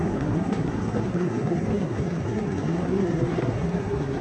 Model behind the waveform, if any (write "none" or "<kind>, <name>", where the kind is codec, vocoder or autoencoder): codec, SNAC